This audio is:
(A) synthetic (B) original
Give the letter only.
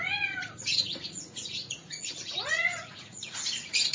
A